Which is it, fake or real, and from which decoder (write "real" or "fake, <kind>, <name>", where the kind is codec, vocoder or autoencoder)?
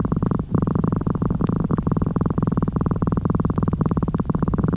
real